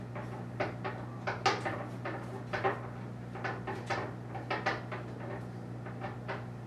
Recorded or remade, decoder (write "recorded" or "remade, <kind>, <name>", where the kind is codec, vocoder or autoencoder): recorded